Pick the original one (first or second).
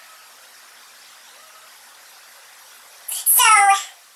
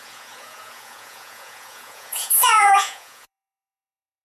first